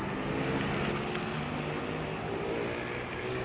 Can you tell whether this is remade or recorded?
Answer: recorded